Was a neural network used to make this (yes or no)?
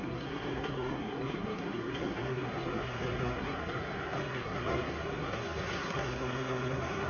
yes